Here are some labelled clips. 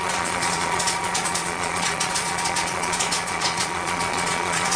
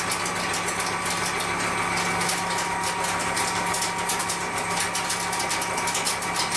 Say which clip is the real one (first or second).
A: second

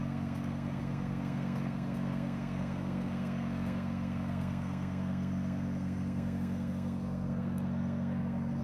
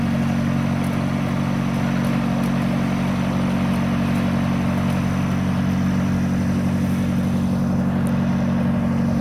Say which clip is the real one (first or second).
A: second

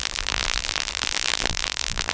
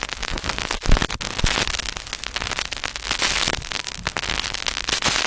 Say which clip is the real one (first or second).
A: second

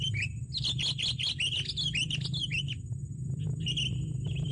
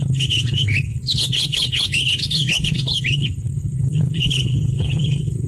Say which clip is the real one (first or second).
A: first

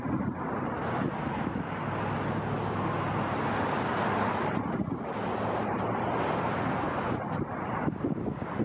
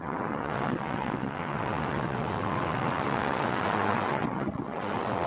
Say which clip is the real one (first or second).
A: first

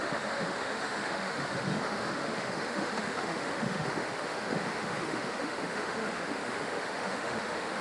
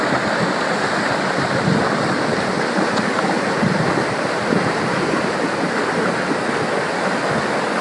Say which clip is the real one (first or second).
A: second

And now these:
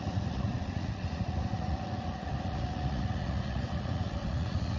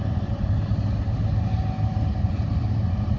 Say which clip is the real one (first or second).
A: second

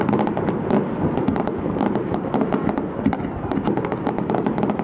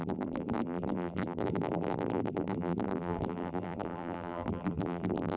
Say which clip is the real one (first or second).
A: first